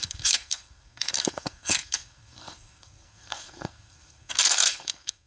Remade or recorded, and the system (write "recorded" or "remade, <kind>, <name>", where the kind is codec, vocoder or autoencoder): remade, codec, SNAC